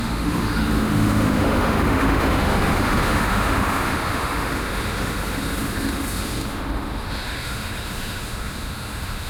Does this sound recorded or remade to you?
remade